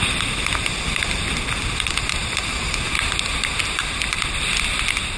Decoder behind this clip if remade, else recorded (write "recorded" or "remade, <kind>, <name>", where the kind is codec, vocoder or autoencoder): recorded